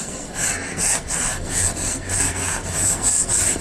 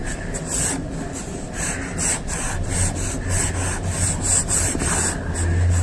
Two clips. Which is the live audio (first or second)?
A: second